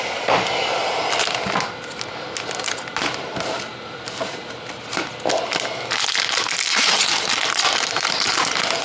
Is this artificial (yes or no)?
no